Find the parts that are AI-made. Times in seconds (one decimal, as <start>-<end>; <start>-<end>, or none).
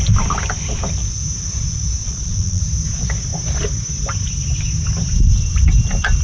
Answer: 2.0-2.6